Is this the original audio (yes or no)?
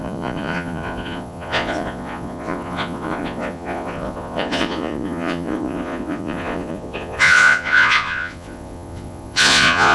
no